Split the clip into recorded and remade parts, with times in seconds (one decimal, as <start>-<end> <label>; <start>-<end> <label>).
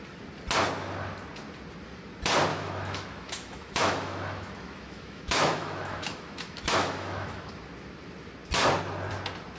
0.0-2.5 recorded; 2.5-7.5 remade; 7.5-9.6 recorded